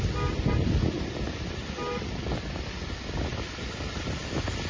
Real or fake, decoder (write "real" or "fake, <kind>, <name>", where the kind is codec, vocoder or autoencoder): real